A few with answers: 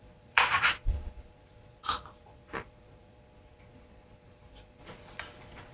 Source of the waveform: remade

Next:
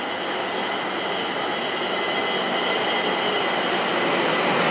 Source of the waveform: recorded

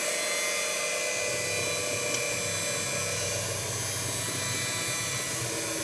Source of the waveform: recorded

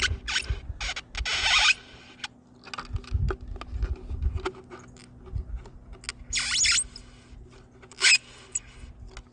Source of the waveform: recorded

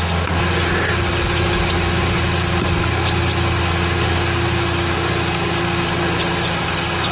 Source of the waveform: recorded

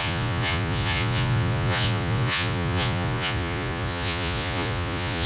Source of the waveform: remade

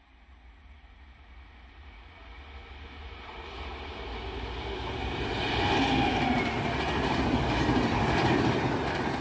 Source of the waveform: recorded